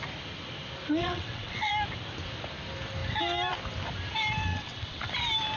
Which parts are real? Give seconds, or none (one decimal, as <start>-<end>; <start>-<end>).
0.0-1.0; 1.7-4.5; 5.1-5.6